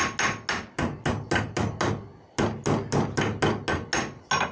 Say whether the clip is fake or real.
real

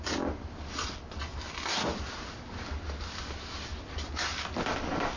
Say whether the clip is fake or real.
real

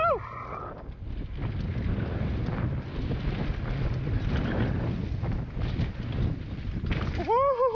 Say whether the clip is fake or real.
real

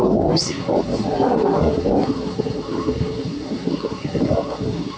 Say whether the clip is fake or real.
fake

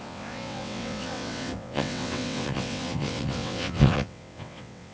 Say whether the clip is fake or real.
fake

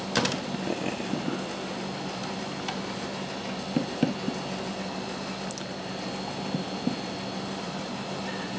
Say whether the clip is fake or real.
real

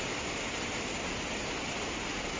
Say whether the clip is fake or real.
real